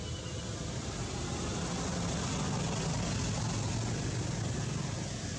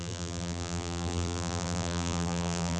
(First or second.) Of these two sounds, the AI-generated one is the second